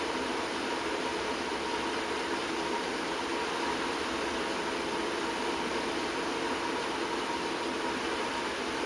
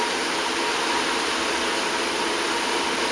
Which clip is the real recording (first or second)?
second